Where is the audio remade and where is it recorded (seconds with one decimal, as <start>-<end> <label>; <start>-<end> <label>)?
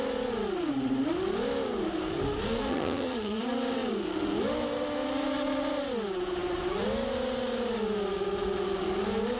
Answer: 0.0-2.7 recorded; 2.7-3.4 remade; 3.4-9.4 recorded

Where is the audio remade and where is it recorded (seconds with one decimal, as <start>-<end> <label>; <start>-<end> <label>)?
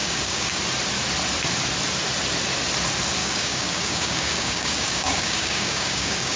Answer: 0.0-0.6 remade; 0.6-3.2 recorded; 3.2-6.4 remade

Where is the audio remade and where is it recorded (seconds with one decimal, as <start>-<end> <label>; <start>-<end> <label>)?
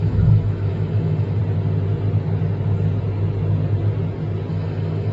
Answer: 0.0-1.4 remade; 1.4-4.5 recorded; 4.5-5.1 remade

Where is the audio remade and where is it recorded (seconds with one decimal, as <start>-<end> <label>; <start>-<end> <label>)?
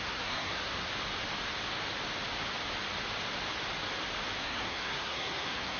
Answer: 0.0-0.9 remade; 0.9-4.4 recorded; 4.4-5.8 remade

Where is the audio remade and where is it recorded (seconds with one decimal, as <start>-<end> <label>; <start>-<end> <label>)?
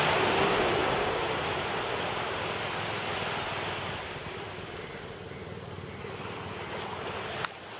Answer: 0.0-7.8 recorded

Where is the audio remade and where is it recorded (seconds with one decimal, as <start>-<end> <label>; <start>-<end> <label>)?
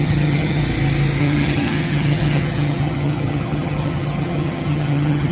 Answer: 0.0-0.6 remade; 0.6-1.2 recorded; 1.2-5.3 remade